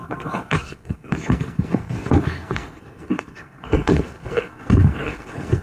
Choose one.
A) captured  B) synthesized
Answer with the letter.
B